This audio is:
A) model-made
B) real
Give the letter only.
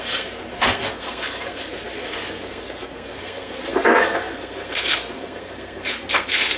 A